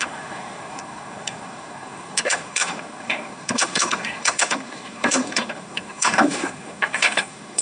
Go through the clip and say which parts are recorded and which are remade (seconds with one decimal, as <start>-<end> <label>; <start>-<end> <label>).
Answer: 0.0-7.6 remade